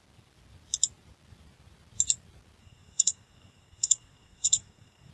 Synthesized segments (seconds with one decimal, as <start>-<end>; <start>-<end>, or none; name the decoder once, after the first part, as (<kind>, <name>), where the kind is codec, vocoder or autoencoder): 2.6-5.1 (codec, SNAC)